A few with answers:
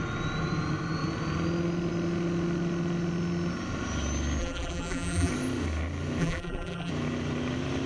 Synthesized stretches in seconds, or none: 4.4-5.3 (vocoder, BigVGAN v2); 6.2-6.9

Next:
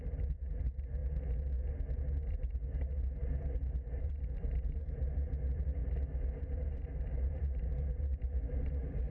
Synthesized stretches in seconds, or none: 0.0-1.0 (vocoder, BigVGAN v2); 4.0-5.8; 6.4-9.1

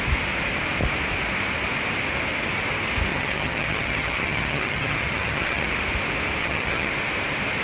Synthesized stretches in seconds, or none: 3.1-5.7 (vocoder, HiFi-GAN); 6.4-6.9

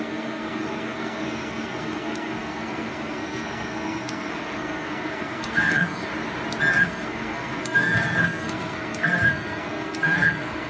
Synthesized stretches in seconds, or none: 0.0-6.1 (codec, SNAC); 6.7-10.7

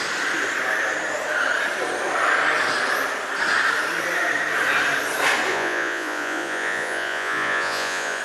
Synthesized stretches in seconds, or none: 5.5-8.2 (vocoder, Vocos)

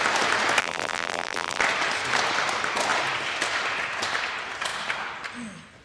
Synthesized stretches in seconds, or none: 0.6-1.6 (vocoder, BigVGAN v2)

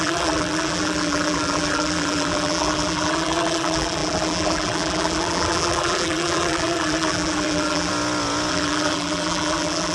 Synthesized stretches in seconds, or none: 0.0-7.9 (vocoder, BigVGAN v2); 8.5-9.9